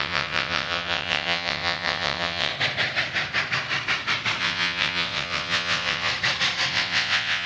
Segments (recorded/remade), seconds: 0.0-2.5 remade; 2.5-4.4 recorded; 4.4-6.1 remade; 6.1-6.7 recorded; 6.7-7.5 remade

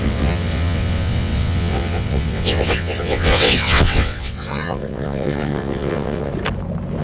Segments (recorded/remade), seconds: 0.0-6.3 remade; 6.3-7.0 recorded

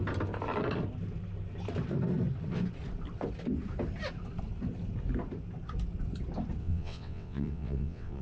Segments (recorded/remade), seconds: 0.0-6.6 recorded; 6.6-8.2 remade

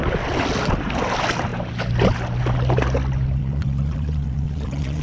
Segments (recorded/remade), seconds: 0.0-3.4 recorded; 3.4-5.0 remade

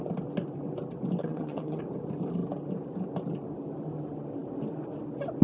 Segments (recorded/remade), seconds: 0.0-1.2 recorded; 1.2-1.8 remade; 1.8-5.4 recorded

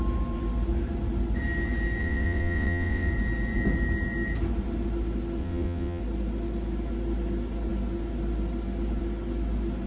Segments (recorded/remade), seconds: 0.0-2.0 recorded; 2.0-3.1 remade; 3.1-5.4 recorded; 5.4-6.0 remade; 6.0-9.9 recorded

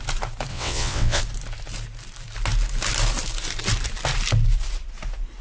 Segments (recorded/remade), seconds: 0.0-0.5 recorded; 0.5-1.2 remade; 1.2-5.4 recorded